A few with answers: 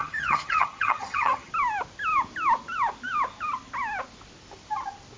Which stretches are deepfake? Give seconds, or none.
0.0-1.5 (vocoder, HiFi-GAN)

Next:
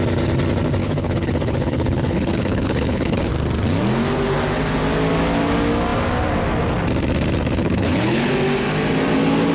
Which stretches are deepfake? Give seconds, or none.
0.8-3.3 (codec, HILCodec); 7.6-8.3